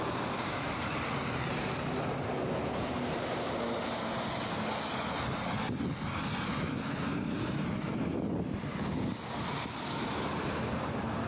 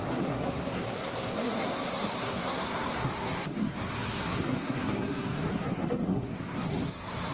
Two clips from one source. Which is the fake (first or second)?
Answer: second